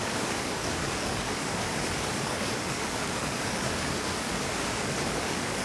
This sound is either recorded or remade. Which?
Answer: remade